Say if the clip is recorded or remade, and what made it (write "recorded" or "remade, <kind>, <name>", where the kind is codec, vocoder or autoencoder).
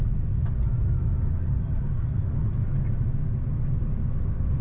recorded